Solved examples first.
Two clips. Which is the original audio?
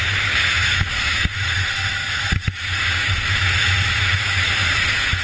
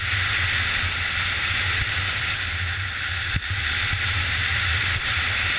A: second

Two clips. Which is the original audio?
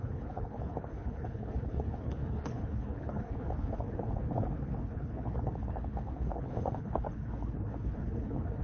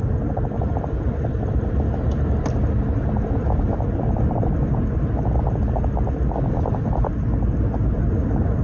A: second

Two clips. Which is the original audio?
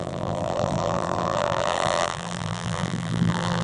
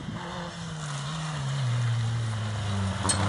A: second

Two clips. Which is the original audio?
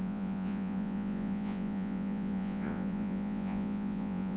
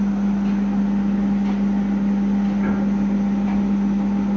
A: second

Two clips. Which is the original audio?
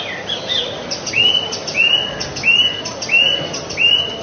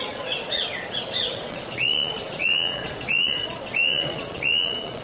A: first